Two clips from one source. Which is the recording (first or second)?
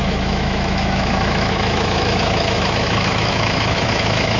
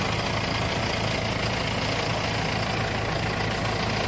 second